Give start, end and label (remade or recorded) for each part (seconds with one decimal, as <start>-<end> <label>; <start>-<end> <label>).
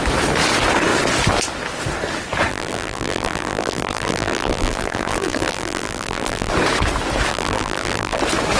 0.0-2.5 recorded; 2.5-6.5 remade; 6.5-7.3 recorded; 7.3-8.2 remade; 8.2-8.6 recorded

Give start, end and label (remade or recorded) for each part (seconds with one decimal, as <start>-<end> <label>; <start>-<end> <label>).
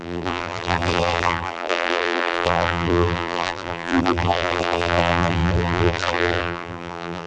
0.0-7.3 remade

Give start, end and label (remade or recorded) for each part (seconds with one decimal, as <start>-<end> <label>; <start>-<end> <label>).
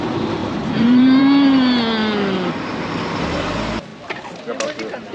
0.0-0.4 recorded; 0.4-1.2 remade; 1.2-5.1 recorded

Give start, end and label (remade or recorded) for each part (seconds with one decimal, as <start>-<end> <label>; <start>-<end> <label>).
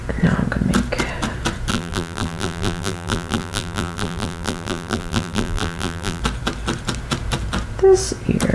0.0-1.7 recorded; 1.7-6.2 remade; 6.2-8.5 recorded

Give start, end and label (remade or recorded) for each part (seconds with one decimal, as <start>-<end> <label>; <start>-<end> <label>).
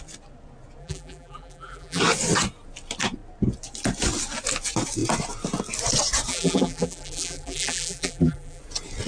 0.0-0.8 recorded; 0.8-2.0 remade; 2.0-6.3 recorded; 6.3-8.6 remade; 8.6-9.1 recorded